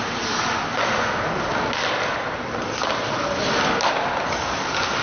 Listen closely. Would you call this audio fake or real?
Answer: real